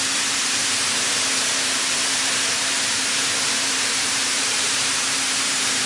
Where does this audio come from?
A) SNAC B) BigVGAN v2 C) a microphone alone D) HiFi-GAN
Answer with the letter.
B